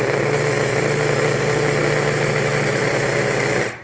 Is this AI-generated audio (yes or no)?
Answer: no